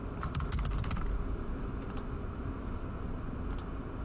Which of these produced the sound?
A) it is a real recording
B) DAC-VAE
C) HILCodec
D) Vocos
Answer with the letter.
A